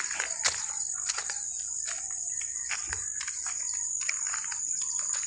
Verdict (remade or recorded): recorded